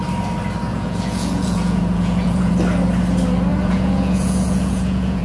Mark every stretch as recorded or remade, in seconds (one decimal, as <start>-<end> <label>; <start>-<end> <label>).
0.0-0.7 recorded; 0.7-2.5 remade; 2.5-3.5 recorded; 3.5-5.2 remade